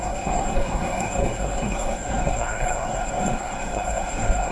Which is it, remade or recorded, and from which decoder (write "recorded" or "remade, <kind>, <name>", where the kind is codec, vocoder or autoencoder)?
remade, codec, SNAC